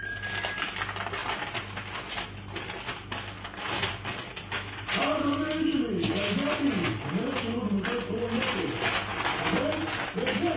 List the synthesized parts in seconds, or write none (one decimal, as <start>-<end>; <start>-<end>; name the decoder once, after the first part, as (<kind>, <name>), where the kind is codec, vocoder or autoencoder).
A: none